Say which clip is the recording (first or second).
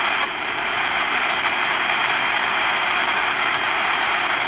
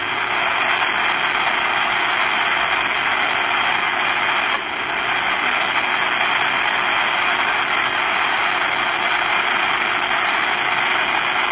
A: second